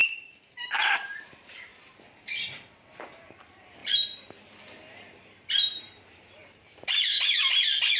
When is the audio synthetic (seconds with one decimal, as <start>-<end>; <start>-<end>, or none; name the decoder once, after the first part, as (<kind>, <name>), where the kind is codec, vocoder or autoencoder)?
0.0-3.8 (vocoder, BigVGAN v2); 5.5-8.0